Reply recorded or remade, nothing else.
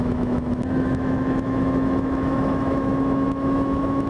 remade